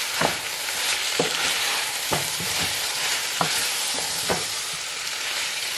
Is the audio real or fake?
fake